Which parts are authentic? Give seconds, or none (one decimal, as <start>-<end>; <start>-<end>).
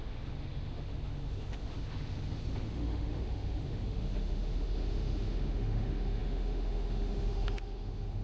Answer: none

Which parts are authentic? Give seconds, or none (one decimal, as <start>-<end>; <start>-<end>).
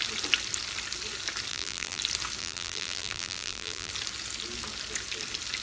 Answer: 0.0-1.5; 2.0-2.4; 3.9-5.6